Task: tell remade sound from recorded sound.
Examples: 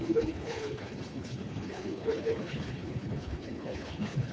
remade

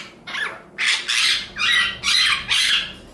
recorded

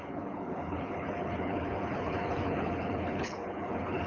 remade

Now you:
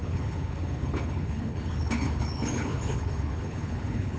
remade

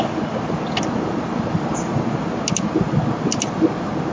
recorded